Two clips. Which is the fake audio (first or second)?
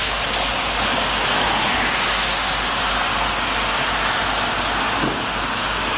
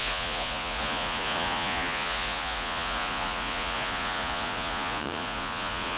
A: second